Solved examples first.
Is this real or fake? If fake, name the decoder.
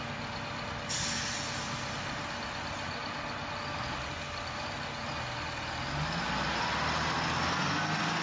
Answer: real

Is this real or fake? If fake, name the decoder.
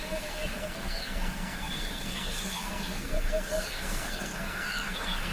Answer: fake, codec, SNAC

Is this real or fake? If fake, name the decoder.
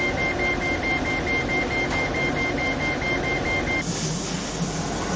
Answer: real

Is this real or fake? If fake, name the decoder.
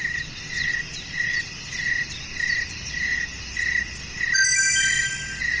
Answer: real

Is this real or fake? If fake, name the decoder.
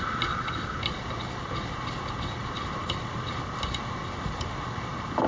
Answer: real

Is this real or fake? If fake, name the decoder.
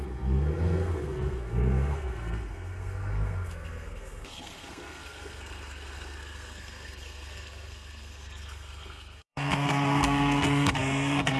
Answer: fake, codec, SNAC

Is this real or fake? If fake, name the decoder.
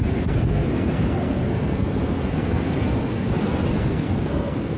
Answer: fake, codec, SNAC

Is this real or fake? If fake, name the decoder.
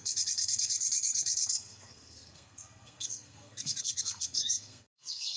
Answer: fake, codec, SNAC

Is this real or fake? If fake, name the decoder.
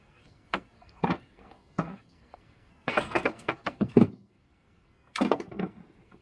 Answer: fake, codec, SNAC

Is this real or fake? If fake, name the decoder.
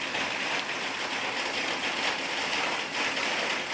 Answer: real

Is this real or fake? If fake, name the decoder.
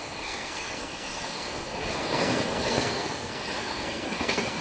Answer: fake, codec, SNAC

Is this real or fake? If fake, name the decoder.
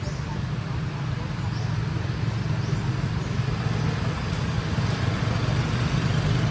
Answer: real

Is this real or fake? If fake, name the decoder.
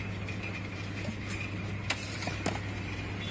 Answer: real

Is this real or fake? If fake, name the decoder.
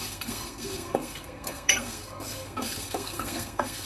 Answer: fake, codec, SNAC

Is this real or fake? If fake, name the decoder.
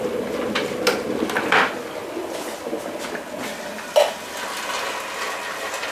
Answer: real